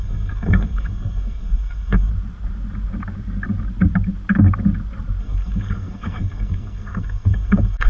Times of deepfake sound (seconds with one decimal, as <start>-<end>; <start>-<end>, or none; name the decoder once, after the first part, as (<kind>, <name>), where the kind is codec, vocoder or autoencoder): 0.0-2.1 (codec, SNAC); 5.2-7.9

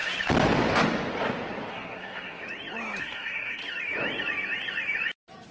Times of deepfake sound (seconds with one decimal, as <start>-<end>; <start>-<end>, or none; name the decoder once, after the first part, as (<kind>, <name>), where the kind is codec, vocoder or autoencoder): 1.7-2.4 (codec, SNAC); 3.0-3.6